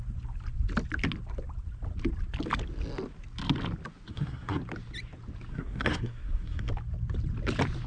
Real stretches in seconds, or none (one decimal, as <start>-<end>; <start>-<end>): 0.0-4.1; 4.6-5.5; 6.7-7.9